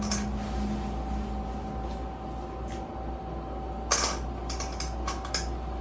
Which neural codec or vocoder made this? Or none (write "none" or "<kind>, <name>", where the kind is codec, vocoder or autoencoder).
none